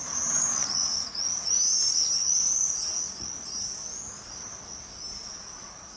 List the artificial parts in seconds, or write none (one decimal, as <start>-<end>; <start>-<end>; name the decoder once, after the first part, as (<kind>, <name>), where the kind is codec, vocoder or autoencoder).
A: 0.6-1.5 (vocoder, Vocos); 2.2-3.5; 5.4-6.0